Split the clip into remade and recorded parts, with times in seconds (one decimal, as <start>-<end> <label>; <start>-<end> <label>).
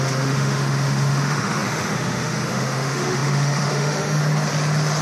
0.0-4.2 remade; 4.2-5.0 recorded